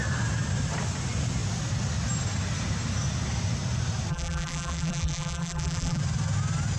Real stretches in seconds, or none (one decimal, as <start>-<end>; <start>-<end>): 0.0-4.1; 6.0-6.8